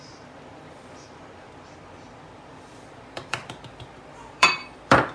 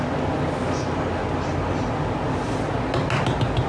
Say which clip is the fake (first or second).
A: first